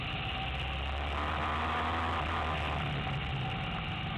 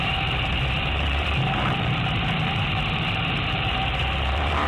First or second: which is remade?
second